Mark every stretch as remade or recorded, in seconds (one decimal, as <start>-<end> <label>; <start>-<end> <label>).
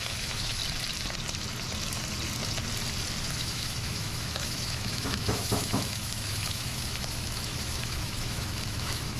0.0-0.6 remade; 0.6-3.3 recorded; 3.3-9.2 remade